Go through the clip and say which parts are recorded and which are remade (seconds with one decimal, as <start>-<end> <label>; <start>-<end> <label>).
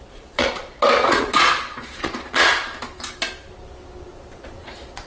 0.0-2.5 remade; 2.5-4.1 recorded; 4.1-5.1 remade